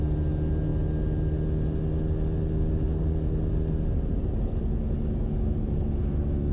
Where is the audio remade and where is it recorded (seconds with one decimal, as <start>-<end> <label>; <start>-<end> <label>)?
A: 0.0-6.5 recorded